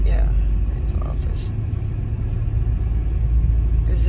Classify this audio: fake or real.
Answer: real